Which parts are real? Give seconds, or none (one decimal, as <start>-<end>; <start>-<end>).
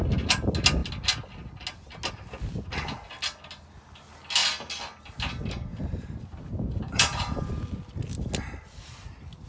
0.0-5.7; 7.7-9.5